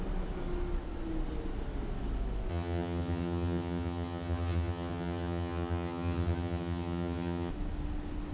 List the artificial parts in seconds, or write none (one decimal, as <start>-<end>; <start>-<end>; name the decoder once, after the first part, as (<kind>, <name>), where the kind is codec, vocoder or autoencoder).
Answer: 2.5-7.5 (vocoder, HiFi-GAN)